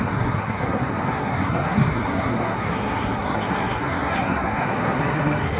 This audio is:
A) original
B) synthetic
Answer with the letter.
B